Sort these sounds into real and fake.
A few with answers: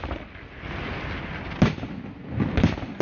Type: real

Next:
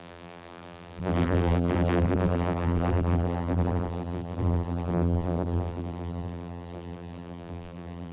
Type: fake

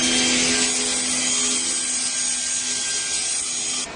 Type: real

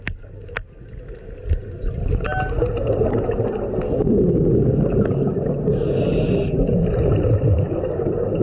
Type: real